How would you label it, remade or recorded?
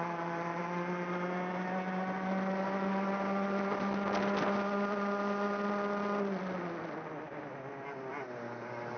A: recorded